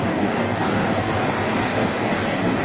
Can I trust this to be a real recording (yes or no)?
no